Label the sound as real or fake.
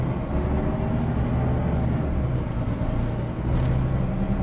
real